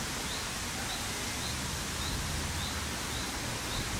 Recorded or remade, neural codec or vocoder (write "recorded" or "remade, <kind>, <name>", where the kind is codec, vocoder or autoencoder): recorded